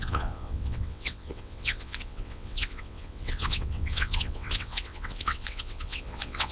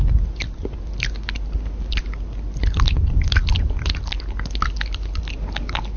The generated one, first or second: first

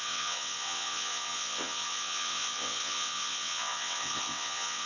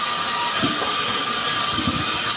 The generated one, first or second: first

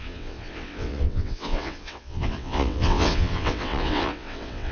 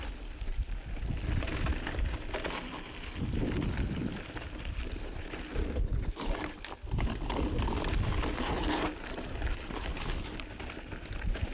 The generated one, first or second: first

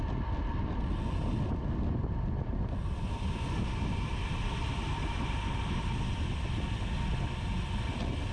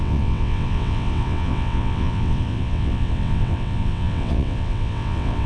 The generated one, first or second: second